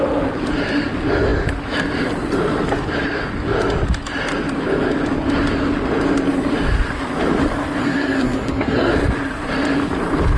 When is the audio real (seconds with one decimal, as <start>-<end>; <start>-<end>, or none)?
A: 0.0-7.8; 8.9-10.4